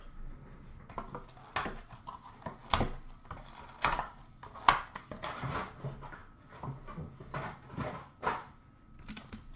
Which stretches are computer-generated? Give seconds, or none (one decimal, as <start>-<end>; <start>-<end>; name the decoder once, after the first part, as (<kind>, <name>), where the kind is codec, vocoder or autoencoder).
3.8-4.4 (vocoder, BigVGAN v2)

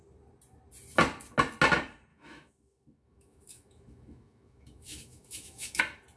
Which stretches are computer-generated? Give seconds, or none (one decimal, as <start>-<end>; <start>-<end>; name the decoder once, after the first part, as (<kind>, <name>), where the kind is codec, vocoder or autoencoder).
2.1-5.8 (autoencoder, DAC-VAE)

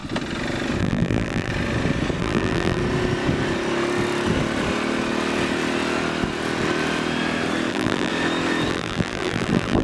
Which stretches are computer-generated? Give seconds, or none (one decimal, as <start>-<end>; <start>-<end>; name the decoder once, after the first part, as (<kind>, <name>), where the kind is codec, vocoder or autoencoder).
0.8-1.5 (vocoder, BigVGAN v2); 2.2-2.8; 7.7-8.1; 8.7-9.8

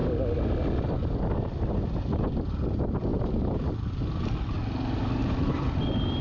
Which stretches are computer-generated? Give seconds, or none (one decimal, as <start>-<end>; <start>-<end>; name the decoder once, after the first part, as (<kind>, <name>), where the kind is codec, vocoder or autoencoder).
3.1-4.7 (vocoder, BigVGAN v2); 5.2-6.2